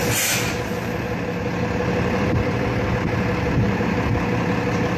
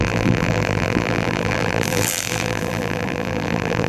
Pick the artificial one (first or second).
second